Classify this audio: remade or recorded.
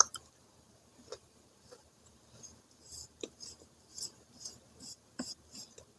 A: remade